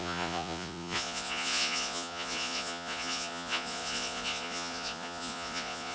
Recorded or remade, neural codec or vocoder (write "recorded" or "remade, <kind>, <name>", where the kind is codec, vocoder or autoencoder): remade, vocoder, Vocos